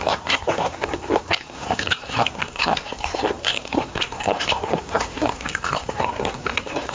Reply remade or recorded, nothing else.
remade